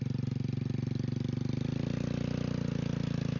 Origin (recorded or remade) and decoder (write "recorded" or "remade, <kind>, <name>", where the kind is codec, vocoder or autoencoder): recorded